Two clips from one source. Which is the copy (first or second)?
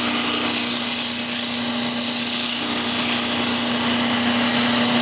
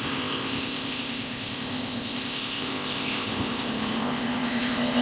second